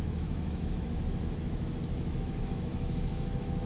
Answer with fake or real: fake